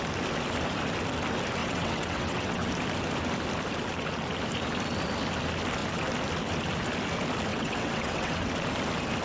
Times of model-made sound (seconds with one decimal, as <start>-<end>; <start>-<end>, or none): 1.6-2.7; 7.5-8.5